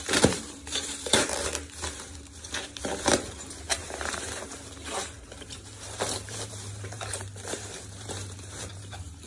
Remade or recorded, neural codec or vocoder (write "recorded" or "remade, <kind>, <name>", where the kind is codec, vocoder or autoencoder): remade, vocoder, BigVGAN v2